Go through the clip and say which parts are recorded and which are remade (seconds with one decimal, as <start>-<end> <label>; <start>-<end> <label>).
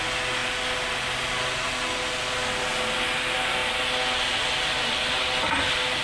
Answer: 0.0-6.0 recorded